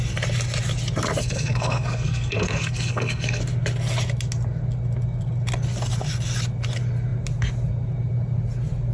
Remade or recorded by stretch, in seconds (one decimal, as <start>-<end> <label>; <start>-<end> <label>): 0.0-1.2 recorded; 1.2-3.4 remade; 3.4-8.9 recorded